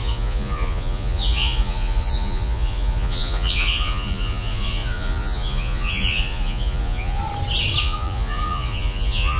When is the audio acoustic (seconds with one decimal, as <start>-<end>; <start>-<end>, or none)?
7.2-7.8